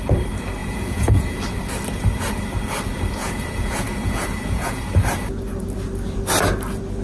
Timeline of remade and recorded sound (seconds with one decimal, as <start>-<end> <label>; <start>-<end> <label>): 0.0-0.6 recorded; 0.6-1.4 remade; 1.4-3.2 recorded; 3.2-4.8 remade; 4.8-7.0 recorded